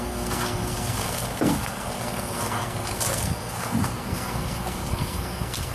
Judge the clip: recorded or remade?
remade